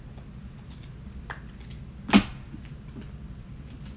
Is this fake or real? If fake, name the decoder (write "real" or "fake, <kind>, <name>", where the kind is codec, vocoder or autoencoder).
real